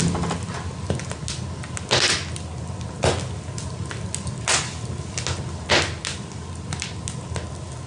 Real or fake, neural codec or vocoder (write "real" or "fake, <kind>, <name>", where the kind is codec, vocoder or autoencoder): real